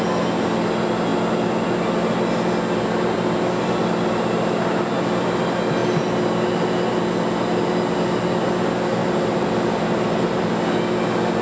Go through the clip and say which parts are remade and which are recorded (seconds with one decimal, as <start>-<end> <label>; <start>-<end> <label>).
0.0-9.0 recorded; 9.0-10.5 remade; 10.5-11.4 recorded